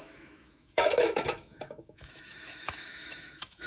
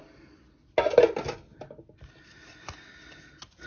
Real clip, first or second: second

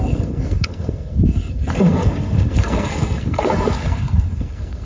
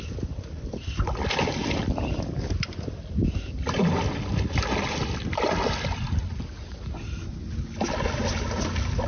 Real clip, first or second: second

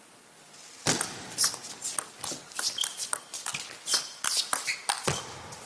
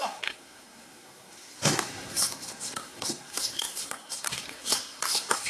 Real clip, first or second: first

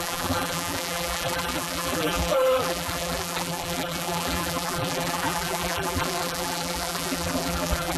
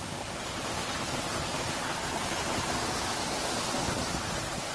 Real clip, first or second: second